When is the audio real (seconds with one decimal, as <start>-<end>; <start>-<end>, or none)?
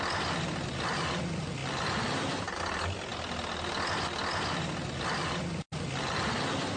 0.0-6.8